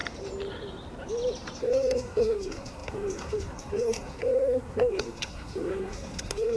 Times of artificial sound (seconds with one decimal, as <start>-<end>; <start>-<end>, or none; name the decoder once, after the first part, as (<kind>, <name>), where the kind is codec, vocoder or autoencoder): 1.6-6.6 (codec, SNAC)